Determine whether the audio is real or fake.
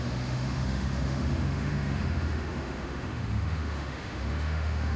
fake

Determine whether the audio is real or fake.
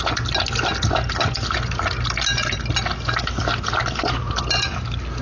real